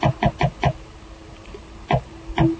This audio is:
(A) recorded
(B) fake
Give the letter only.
A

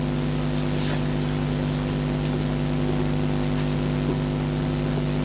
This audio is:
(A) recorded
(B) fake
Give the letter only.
A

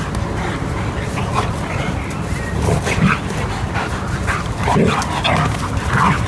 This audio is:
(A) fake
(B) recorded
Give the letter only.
B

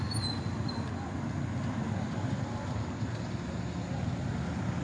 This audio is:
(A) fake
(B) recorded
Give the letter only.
B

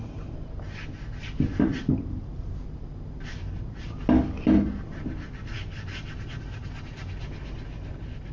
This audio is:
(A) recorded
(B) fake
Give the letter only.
A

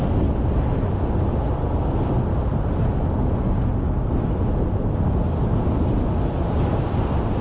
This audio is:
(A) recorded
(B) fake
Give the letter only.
A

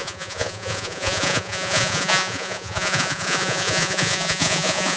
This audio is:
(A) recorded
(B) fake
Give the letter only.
B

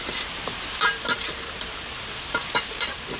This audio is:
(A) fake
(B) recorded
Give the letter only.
B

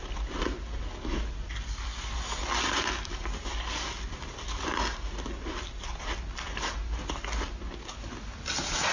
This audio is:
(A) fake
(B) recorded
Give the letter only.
B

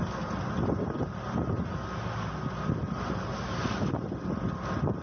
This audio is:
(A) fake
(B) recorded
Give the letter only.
B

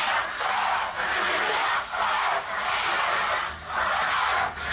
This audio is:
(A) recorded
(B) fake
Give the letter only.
A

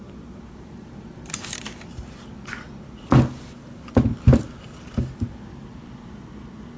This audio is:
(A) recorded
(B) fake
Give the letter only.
A